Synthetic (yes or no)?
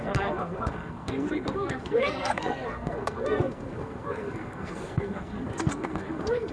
yes